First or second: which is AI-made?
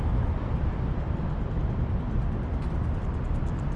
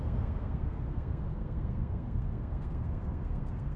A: second